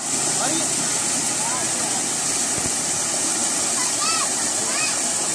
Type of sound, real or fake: real